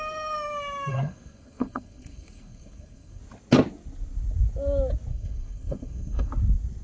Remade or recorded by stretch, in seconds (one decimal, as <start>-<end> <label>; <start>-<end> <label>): 0.0-0.9 recorded; 0.9-3.2 remade; 3.2-5.1 recorded; 5.1-6.3 remade; 6.3-6.8 recorded